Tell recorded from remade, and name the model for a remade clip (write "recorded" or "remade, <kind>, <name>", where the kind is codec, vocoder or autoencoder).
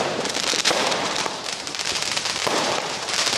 remade, vocoder, BigVGAN v2